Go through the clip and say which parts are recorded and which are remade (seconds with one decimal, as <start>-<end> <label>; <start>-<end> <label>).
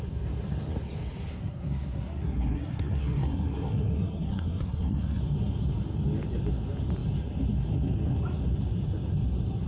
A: 0.0-1.3 recorded; 1.3-5.2 remade; 5.2-9.7 recorded